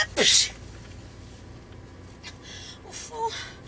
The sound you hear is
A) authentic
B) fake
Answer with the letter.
A